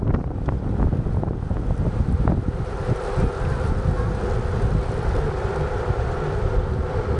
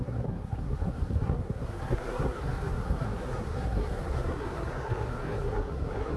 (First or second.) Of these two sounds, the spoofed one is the second